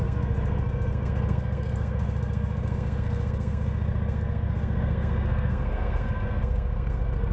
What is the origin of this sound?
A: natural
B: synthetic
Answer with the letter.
B